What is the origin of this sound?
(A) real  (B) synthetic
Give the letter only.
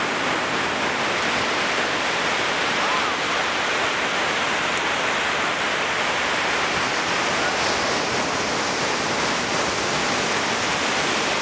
A